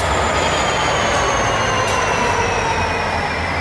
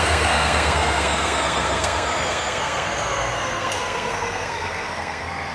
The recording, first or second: first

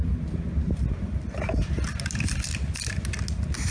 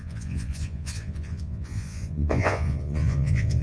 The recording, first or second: first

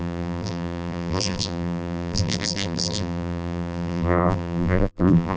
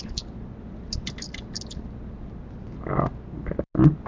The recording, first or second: second